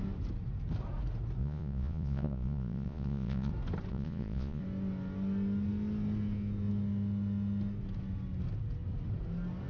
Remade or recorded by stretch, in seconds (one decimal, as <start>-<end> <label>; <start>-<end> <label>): 0.0-1.4 recorded; 1.4-3.5 remade; 3.5-3.9 recorded; 3.9-4.6 remade; 4.6-9.7 recorded